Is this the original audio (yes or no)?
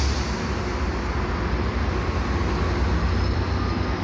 yes